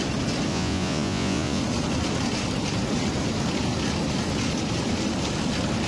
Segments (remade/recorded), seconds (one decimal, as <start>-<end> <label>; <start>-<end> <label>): 0.0-0.5 recorded; 0.5-1.6 remade; 1.6-5.9 recorded